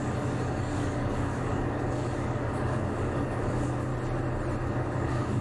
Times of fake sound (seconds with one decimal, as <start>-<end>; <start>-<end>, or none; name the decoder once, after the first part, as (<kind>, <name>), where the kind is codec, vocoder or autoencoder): 0.0-3.9 (codec, DAC); 4.6-5.4